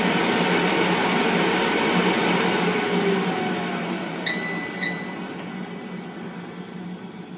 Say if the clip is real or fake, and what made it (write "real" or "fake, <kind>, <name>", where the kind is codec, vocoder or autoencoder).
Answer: real